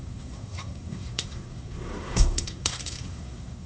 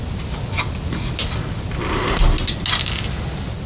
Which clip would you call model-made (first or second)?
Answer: first